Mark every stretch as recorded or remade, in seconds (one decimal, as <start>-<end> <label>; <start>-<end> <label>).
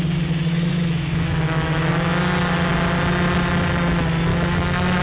0.0-0.5 recorded; 0.5-1.9 remade; 1.9-4.3 recorded; 4.3-5.0 remade